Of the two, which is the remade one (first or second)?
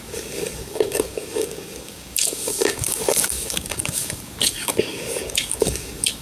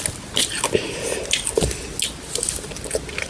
first